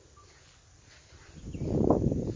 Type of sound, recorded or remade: recorded